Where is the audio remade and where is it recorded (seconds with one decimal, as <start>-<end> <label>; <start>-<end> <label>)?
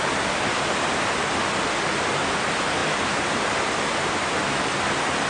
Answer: 0.0-5.3 recorded